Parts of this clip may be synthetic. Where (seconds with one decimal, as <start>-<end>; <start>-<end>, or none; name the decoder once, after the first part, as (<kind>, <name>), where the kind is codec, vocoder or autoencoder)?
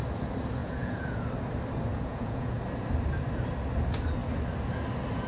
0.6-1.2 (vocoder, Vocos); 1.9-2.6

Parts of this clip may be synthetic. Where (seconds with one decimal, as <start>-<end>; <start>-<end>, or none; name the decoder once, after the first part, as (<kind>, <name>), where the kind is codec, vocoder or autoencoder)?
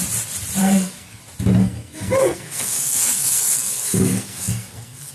0.6-1.2 (codec, SNAC); 1.6-5.1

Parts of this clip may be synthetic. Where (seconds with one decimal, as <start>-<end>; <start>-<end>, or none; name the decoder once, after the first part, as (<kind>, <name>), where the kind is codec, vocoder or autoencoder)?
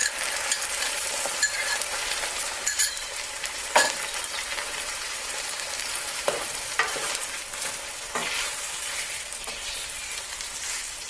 0.9-11.1 (vocoder, BigVGAN v2)